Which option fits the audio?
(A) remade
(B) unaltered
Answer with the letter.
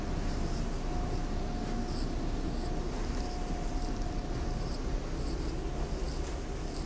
B